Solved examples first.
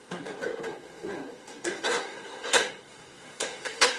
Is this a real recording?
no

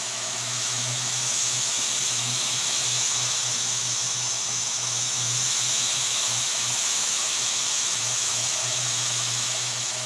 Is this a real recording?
no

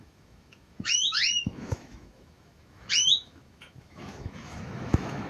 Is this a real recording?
no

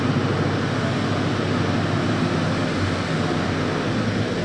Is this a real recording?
yes